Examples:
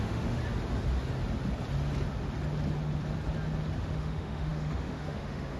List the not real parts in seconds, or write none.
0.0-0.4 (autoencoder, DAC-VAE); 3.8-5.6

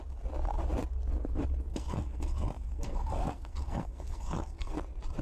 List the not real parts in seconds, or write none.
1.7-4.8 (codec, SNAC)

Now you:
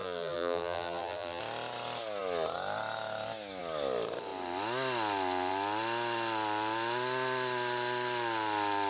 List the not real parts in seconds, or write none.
0.0-1.4 (vocoder, BigVGAN v2)